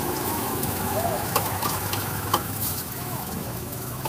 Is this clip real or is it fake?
fake